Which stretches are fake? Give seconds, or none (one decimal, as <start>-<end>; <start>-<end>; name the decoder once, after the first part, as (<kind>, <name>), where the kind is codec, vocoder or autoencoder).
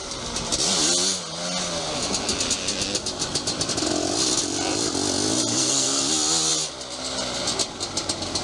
5.5-6.0 (codec, SNAC)